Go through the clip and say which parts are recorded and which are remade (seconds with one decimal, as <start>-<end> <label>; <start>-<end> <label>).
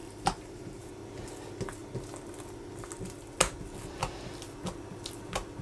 0.0-0.9 remade; 0.9-5.6 recorded